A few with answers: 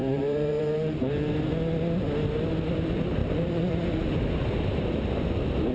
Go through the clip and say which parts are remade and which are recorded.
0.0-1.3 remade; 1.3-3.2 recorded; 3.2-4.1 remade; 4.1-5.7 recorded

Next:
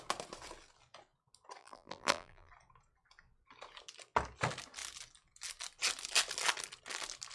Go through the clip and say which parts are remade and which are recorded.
0.0-1.6 recorded; 1.6-2.5 remade; 2.5-7.3 recorded

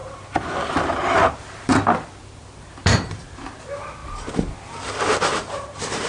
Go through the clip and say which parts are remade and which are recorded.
0.0-0.7 recorded; 0.7-4.0 remade; 4.0-5.0 recorded; 5.0-6.1 remade

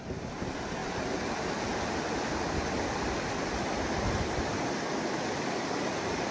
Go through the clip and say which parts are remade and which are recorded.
0.0-6.3 recorded